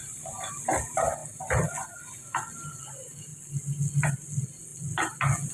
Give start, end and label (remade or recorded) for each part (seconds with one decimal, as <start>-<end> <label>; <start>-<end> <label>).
0.0-5.5 recorded